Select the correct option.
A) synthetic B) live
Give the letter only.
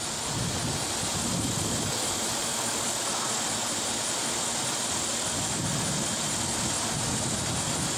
B